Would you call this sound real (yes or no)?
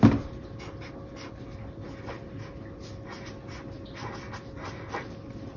yes